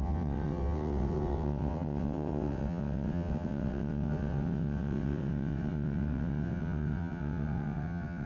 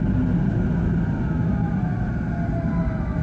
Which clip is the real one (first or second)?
second